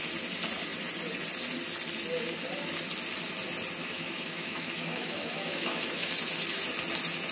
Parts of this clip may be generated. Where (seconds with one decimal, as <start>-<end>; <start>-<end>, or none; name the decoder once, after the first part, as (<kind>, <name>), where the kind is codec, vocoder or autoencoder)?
3.8-6.1 (autoencoder, DAC-VAE)

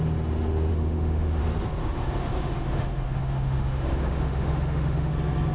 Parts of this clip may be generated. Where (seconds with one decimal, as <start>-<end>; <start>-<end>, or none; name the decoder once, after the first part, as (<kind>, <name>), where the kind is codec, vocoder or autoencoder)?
0.7-1.4 (autoencoder, DAC-VAE); 1.8-5.1

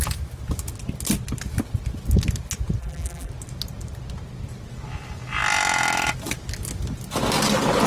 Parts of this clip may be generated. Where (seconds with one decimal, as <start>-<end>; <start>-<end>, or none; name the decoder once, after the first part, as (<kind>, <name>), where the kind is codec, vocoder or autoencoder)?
2.8-3.3 (vocoder, BigVGAN v2)

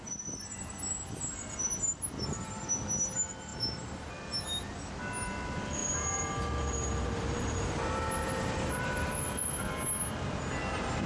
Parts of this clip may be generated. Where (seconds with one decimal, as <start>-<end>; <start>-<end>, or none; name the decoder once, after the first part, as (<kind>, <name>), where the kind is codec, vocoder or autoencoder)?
3.5-4.1 (vocoder, BigVGAN v2); 5.8-9.5